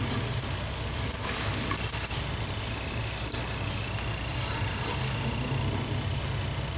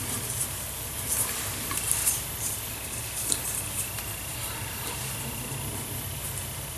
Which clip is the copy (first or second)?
second